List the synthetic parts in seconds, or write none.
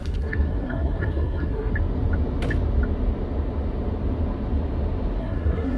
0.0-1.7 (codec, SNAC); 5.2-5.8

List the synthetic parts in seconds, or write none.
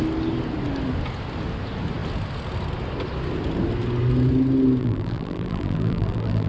4.8-6.5 (vocoder, BigVGAN v2)